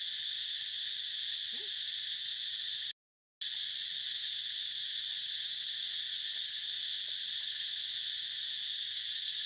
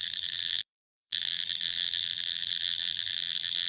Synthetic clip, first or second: second